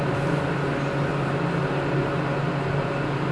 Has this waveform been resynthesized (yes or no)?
no